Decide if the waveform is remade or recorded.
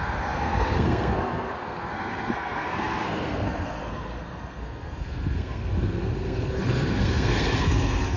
remade